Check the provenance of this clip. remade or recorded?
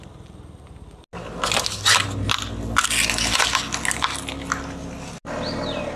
recorded